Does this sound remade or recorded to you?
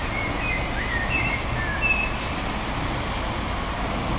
recorded